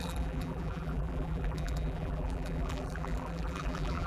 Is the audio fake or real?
fake